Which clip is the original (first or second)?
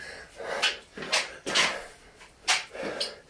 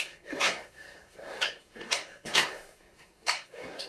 first